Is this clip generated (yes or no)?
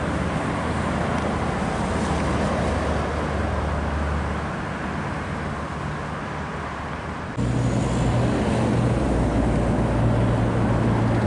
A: no